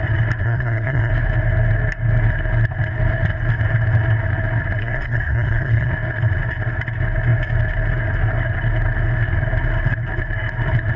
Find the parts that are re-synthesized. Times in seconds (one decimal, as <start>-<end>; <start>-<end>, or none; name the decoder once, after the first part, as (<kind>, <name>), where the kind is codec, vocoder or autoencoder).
0.4-1.1 (codec, SNAC); 4.8-5.9